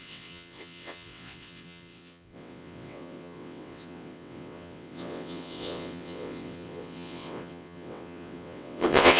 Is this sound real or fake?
fake